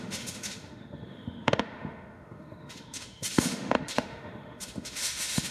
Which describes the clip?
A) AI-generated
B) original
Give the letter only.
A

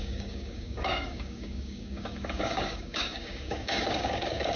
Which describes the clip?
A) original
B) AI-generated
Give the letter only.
B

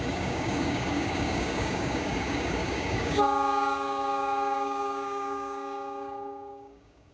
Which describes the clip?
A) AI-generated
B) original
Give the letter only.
A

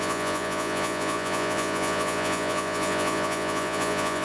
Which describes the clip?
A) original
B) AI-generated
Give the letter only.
B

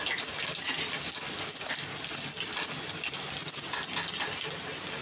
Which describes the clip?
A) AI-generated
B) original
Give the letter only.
B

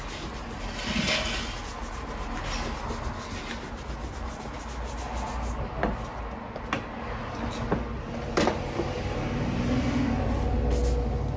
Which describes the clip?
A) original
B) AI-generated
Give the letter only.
A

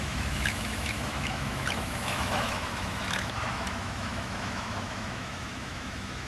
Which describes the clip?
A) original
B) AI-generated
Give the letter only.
B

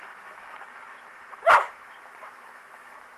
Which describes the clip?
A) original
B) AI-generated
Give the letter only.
B